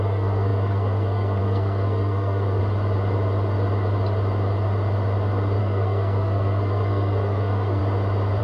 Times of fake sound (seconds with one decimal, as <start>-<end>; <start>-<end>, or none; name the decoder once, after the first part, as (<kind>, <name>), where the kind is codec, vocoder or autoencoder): 0.0-2.6 (codec, SNAC); 5.6-7.8